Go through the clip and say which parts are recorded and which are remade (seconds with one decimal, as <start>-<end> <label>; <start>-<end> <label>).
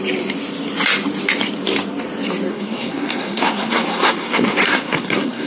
0.0-2.5 recorded; 2.5-5.5 remade